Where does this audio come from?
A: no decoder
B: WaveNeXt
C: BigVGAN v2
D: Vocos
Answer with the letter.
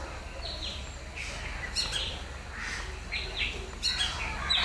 A